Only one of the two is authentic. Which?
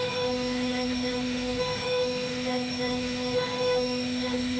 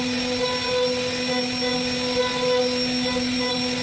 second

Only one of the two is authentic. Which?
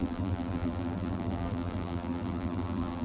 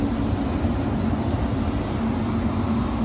second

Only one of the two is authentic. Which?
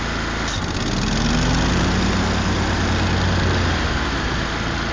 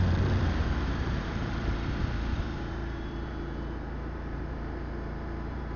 first